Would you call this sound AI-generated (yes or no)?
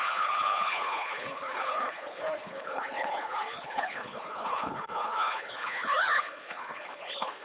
yes